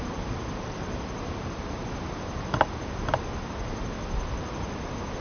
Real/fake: real